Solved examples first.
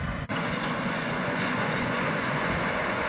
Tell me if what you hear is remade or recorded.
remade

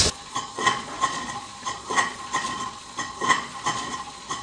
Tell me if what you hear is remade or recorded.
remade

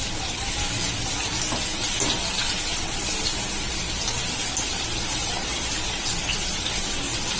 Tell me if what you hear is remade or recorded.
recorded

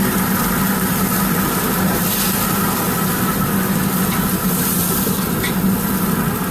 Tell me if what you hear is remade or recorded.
recorded